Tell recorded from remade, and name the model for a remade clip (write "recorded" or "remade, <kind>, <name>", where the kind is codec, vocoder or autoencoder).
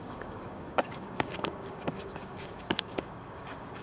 remade, codec, DAC